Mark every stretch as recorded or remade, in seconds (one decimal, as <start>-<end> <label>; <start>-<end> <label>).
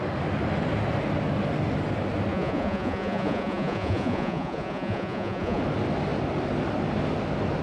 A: 0.0-2.3 recorded; 2.3-5.6 remade; 5.6-7.6 recorded